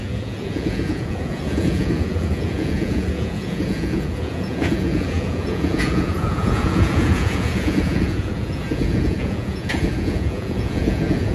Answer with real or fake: fake